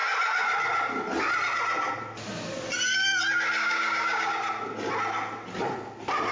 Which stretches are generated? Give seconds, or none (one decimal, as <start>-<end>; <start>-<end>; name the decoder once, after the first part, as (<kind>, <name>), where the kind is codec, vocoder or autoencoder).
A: 3.6-4.3 (codec, DAC)